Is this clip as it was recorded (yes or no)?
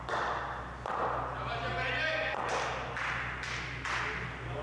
yes